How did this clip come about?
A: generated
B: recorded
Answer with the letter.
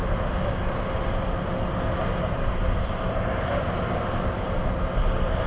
B